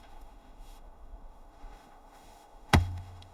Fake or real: fake